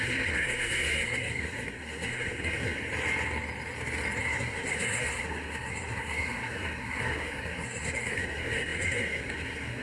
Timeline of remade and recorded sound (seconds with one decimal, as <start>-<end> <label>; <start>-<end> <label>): 0.0-2.8 remade; 2.8-4.2 recorded; 4.2-9.8 remade